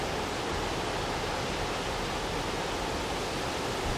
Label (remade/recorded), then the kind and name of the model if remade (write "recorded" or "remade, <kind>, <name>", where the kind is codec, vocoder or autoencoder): remade, vocoder, BigVGAN v2